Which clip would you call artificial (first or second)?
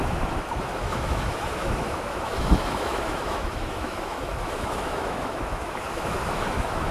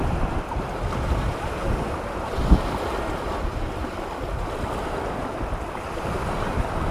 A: first